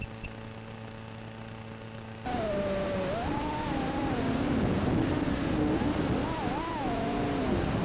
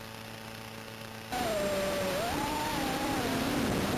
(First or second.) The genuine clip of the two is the first